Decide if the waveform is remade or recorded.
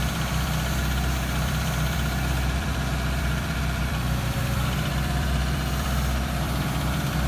remade